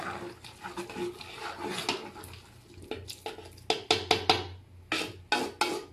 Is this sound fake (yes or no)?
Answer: no